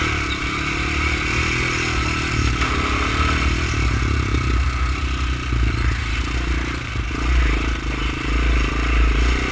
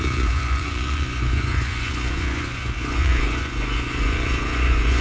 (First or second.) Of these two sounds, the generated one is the second